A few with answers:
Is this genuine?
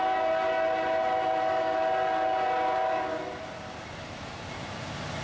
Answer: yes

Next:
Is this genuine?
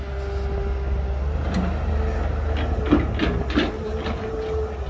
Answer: yes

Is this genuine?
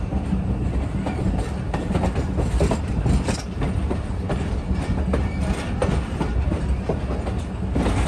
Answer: yes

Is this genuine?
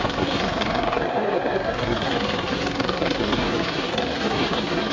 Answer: no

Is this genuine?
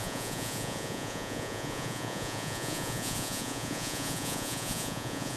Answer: no